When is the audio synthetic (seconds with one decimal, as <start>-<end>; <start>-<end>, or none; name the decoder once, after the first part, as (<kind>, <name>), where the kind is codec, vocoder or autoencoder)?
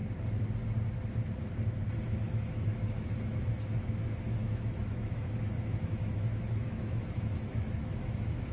2.0-8.5 (autoencoder, DAC-VAE)